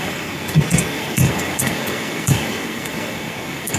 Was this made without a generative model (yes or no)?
no